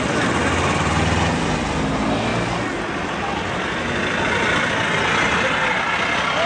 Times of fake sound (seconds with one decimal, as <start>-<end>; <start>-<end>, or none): none